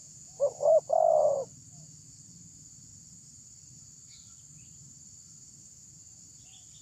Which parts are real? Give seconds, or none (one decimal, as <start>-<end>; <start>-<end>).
0.8-6.8

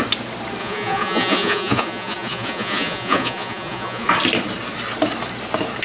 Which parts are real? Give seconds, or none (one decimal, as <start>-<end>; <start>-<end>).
0.0-0.6; 4.1-5.8